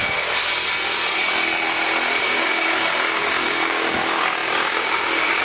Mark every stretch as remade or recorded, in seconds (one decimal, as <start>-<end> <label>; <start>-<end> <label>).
0.0-2.2 recorded; 2.2-5.4 remade